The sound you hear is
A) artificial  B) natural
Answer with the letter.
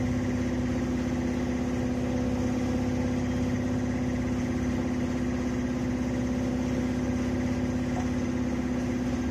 B